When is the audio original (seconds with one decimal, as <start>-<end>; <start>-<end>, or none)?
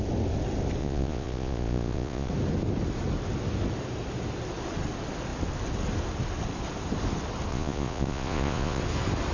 0.0-0.8; 2.3-7.5; 8.8-9.3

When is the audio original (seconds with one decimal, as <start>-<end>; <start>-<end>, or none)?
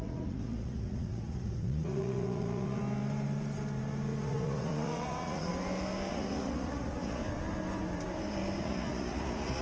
2.8-4.2; 5.5-6.1; 7.2-8.6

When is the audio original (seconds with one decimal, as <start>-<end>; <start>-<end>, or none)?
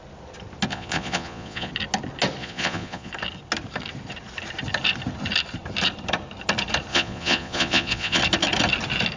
0.0-0.7; 1.7-2.4; 3.1-6.9; 8.2-9.2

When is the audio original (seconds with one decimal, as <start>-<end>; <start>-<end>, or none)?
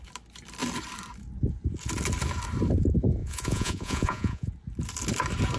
0.0-3.2; 4.5-5.6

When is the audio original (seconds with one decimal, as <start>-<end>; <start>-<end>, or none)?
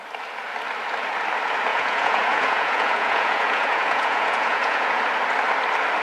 0.0-1.7; 5.0-6.0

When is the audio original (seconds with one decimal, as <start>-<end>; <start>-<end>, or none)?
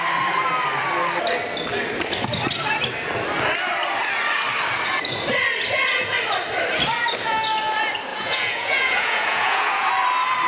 0.0-8.1; 9.9-10.5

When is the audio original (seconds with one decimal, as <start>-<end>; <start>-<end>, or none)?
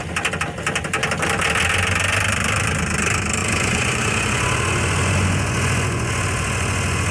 0.0-3.4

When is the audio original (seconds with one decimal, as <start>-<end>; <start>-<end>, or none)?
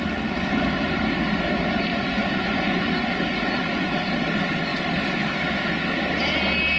0.0-1.9; 3.9-6.8